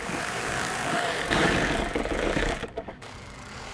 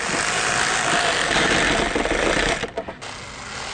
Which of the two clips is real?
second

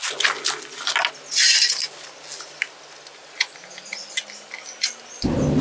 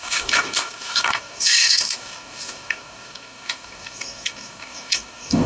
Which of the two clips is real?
first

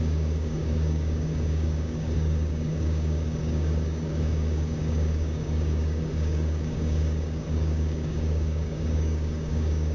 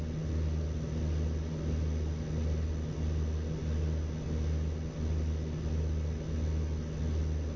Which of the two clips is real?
second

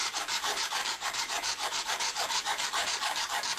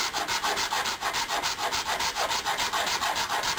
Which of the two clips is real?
second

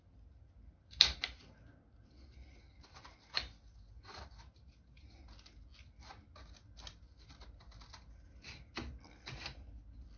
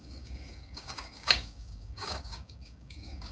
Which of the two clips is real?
first